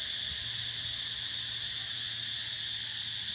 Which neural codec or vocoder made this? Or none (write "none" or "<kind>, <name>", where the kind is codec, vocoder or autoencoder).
none